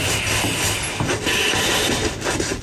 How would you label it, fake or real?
real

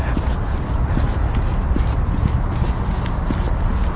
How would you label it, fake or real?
real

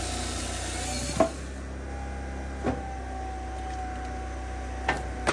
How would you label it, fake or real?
real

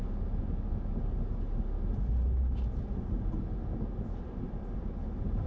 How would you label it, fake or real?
real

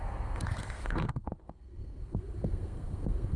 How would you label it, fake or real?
fake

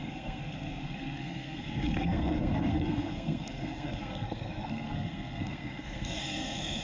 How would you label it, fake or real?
fake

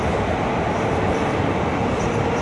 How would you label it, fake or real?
real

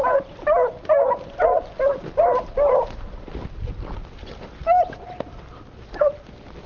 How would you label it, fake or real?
real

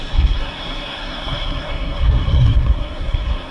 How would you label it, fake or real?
fake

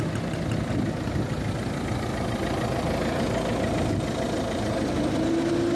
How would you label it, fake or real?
real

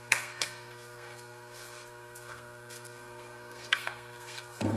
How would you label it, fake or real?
fake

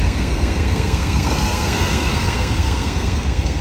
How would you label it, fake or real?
fake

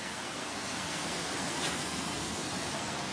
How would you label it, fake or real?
fake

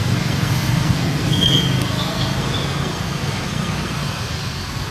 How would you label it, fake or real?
fake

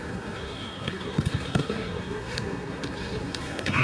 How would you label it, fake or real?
fake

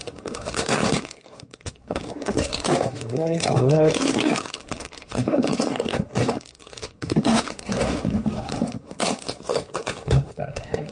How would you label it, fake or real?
fake